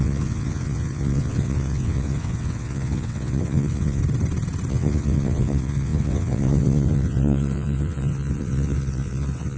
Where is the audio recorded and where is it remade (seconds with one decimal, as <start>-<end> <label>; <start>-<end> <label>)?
0.0-4.0 remade; 4.0-4.7 recorded; 4.7-9.6 remade